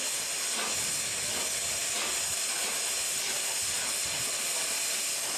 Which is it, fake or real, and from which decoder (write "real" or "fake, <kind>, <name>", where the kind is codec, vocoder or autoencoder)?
real